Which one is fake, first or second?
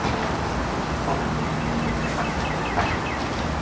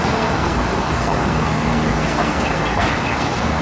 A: second